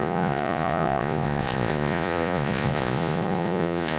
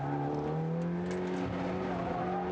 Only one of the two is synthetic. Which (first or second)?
first